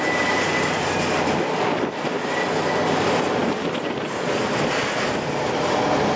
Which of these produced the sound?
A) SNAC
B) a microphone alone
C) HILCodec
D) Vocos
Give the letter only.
B